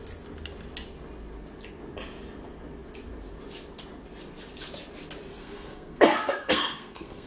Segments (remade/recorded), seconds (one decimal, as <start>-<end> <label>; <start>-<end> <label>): 0.0-5.4 recorded; 5.4-7.3 remade